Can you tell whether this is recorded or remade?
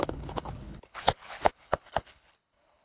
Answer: remade